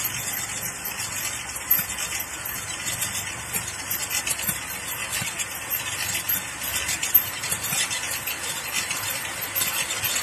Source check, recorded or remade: recorded